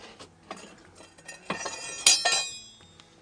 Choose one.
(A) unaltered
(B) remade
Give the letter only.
A